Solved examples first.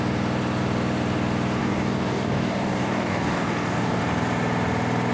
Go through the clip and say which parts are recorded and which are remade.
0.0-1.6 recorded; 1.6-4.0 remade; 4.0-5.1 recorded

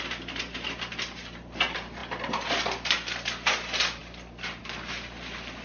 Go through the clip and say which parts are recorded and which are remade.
0.0-5.6 recorded

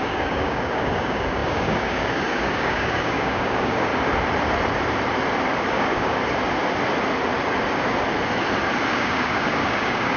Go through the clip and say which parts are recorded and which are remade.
0.0-3.9 remade; 3.9-5.7 recorded; 5.7-6.2 remade; 6.2-8.9 recorded; 8.9-10.2 remade

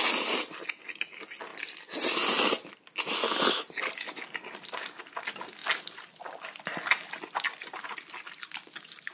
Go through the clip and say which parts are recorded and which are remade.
0.0-9.1 recorded

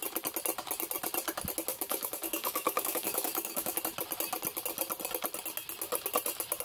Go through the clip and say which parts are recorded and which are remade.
0.0-1.7 recorded; 1.7-3.8 remade; 3.8-6.6 recorded